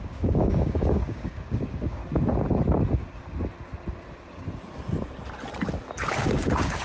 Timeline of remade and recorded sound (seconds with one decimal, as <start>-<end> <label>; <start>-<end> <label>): 0.0-2.0 remade; 2.0-6.1 recorded; 6.1-6.8 remade